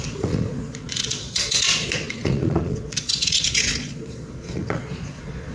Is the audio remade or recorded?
remade